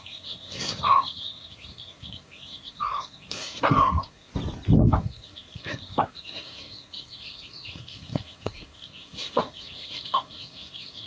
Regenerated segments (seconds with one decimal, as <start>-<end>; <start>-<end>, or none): 0.0-4.3; 4.8-11.1